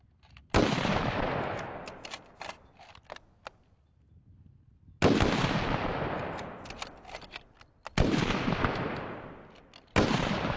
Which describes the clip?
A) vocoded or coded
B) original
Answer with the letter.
B